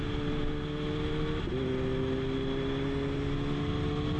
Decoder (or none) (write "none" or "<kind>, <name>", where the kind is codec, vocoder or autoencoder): none